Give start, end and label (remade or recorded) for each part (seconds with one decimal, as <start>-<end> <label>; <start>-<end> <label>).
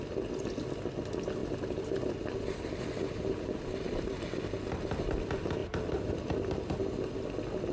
0.0-7.7 recorded